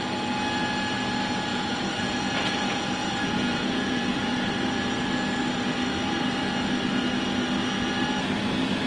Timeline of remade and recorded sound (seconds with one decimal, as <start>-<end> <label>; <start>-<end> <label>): 0.0-1.5 recorded; 1.5-4.5 remade; 4.5-8.9 recorded